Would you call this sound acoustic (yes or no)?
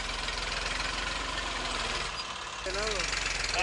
yes